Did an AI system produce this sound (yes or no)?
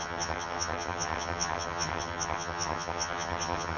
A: yes